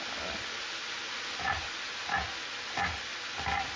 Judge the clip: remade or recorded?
recorded